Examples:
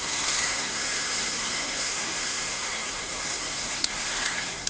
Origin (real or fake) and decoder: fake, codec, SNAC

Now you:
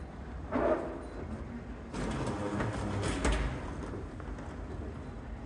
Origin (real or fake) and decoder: real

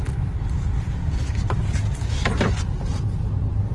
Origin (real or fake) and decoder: real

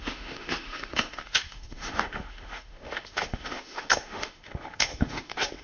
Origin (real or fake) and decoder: fake, autoencoder, DAC-VAE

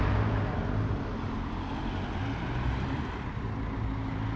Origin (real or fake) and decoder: real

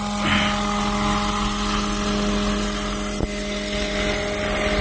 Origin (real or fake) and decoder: real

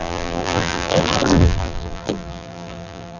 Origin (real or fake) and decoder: fake, vocoder, BigVGAN v2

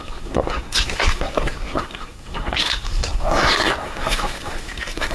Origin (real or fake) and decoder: fake, codec, SNAC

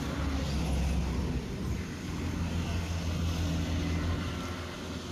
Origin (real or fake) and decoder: real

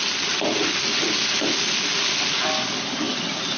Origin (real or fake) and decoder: real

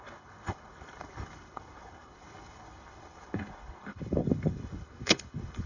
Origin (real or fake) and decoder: fake, codec, HILCodec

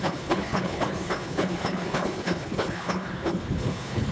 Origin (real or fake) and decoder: fake, codec, HILCodec